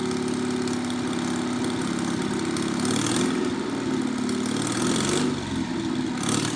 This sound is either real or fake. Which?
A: real